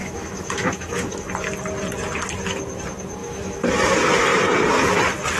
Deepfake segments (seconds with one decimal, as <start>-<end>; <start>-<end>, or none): 0.0-1.3; 3.2-3.7